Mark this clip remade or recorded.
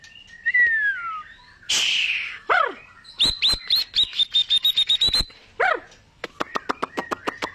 recorded